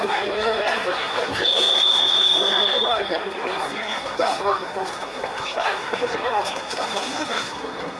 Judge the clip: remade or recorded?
remade